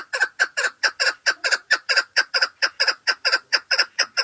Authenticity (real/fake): fake